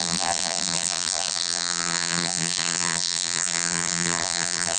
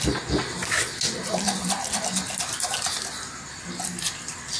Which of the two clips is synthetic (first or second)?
first